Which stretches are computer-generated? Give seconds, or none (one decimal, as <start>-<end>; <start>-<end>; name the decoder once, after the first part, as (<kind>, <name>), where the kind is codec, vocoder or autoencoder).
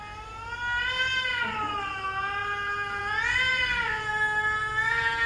3.5-4.0 (vocoder, BigVGAN v2)